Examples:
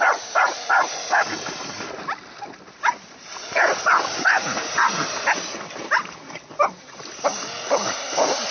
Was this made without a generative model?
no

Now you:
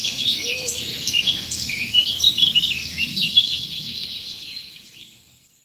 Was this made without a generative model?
no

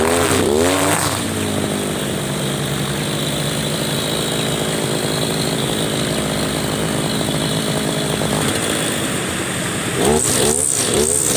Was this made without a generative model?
yes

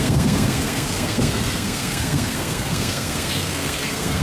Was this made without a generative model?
no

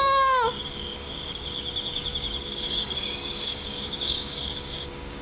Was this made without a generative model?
no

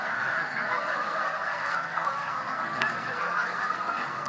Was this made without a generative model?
no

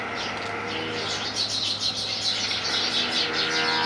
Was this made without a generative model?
yes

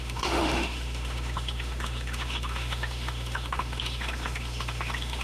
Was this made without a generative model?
no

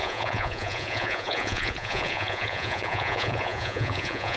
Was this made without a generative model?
no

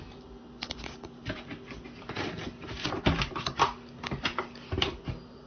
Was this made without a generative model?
yes